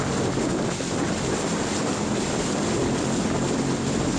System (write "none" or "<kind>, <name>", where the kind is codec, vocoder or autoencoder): none